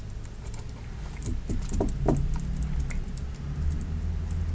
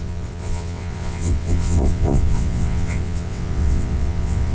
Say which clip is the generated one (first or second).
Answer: second